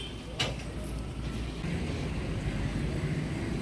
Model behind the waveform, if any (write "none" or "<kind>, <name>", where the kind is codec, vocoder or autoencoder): none